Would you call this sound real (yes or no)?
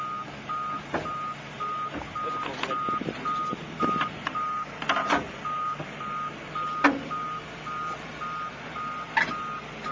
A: yes